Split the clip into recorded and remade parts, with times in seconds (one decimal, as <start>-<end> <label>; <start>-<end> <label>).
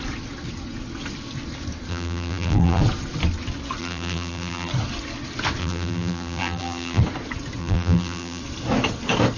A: 0.0-1.9 recorded; 1.9-2.8 remade; 2.8-3.8 recorded; 3.8-4.7 remade; 4.7-5.6 recorded; 5.6-7.0 remade; 7.0-7.6 recorded; 7.6-8.4 remade; 8.4-9.4 recorded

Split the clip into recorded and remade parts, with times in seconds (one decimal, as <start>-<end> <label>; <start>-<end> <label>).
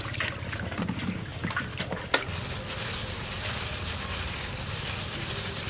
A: 0.0-1.3 recorded; 1.3-3.9 remade; 3.9-5.7 recorded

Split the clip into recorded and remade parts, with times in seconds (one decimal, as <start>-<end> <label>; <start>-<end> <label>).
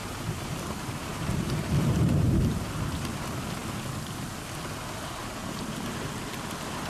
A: 0.0-2.8 remade; 2.8-5.4 recorded; 5.4-6.1 remade; 6.1-6.9 recorded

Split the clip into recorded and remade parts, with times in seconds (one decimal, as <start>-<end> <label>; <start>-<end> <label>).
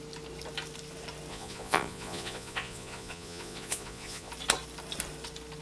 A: 0.0-1.3 recorded; 1.3-4.3 remade; 4.3-5.6 recorded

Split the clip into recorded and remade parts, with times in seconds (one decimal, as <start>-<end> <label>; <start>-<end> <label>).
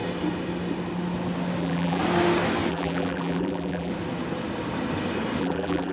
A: 0.0-1.6 recorded; 1.6-2.0 remade; 2.0-2.7 recorded; 2.7-3.9 remade; 3.9-5.4 recorded; 5.4-5.9 remade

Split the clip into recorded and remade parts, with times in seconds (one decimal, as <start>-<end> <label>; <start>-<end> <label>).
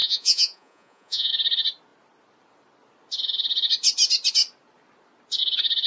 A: 0.0-1.3 remade; 1.3-5.9 recorded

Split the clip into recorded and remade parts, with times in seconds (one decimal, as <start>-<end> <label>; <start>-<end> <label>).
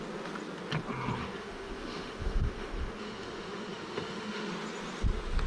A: 0.0-1.2 recorded; 1.2-4.5 remade; 4.5-5.5 recorded